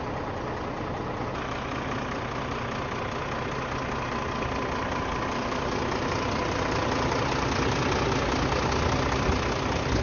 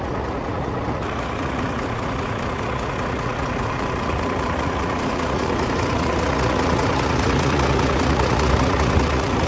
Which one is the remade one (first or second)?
second